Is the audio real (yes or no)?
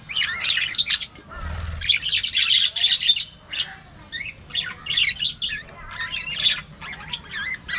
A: yes